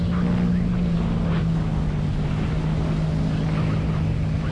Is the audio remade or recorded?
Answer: recorded